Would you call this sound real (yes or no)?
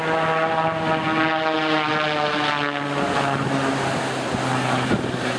yes